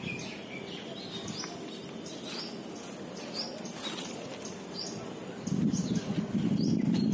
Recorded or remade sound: recorded